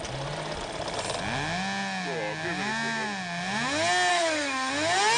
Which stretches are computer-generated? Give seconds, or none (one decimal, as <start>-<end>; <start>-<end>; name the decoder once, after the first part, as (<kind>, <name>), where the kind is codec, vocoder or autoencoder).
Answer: 4.1-4.7 (codec, SNAC)